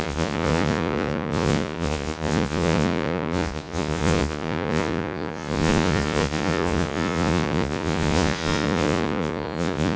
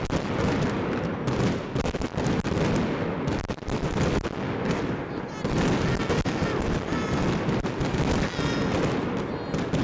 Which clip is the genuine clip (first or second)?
second